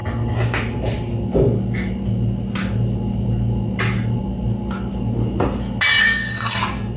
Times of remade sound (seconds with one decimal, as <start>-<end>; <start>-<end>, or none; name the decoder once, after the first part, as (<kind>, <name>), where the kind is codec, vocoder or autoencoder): 6.0-6.6 (codec, SNAC)